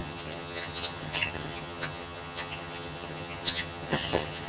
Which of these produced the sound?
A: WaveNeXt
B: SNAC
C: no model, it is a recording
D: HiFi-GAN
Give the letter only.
D